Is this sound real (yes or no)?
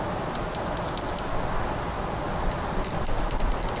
yes